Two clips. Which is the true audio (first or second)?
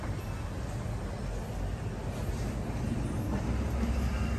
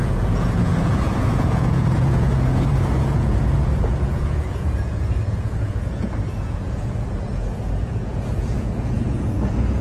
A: first